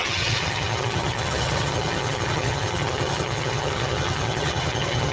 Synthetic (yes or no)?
yes